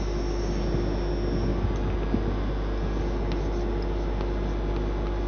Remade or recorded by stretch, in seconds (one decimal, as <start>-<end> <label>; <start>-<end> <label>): 0.0-5.3 recorded